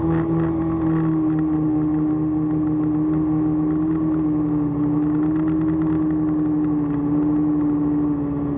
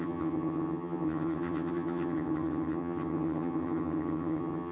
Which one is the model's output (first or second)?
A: second